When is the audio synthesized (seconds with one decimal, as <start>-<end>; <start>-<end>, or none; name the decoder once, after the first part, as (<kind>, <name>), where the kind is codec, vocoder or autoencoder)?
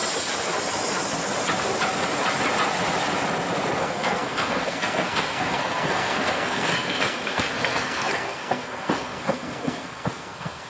3.8-10.7 (codec, SNAC)